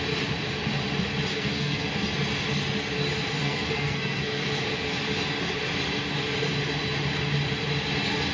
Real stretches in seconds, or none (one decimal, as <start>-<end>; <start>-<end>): 0.0-1.3; 1.9-3.4; 4.6-8.3